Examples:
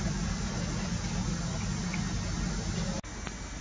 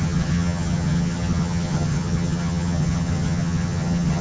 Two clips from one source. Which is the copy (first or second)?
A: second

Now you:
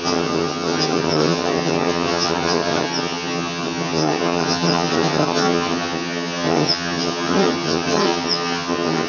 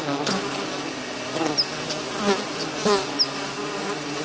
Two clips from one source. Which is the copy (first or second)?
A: first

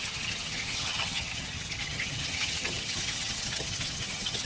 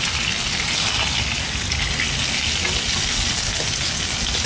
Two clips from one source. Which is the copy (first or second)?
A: first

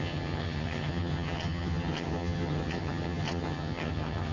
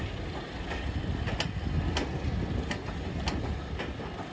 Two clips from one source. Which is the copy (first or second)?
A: first